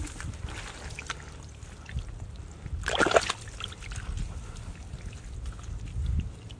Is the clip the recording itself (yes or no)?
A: yes